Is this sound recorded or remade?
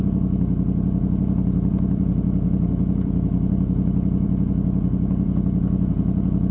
remade